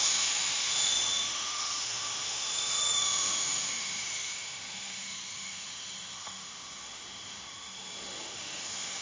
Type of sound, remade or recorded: remade